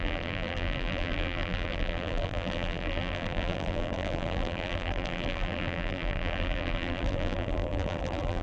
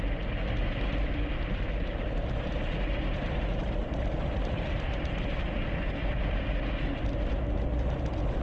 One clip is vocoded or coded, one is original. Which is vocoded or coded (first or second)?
first